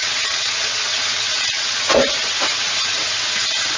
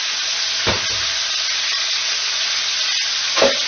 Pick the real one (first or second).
second